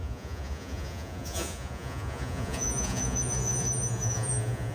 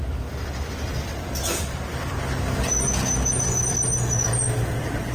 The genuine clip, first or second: second